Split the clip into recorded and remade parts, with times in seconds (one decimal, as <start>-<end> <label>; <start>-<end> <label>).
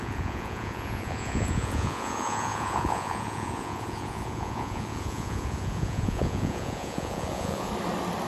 0.0-7.7 remade; 7.7-8.3 recorded